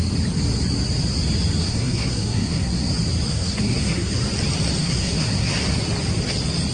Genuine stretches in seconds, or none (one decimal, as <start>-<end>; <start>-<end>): 0.0-1.6; 2.9-3.3; 4.1-4.8; 5.5-6.7